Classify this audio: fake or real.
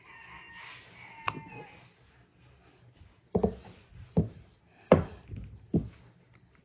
real